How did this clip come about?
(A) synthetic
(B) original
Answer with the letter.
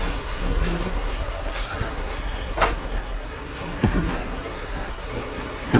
A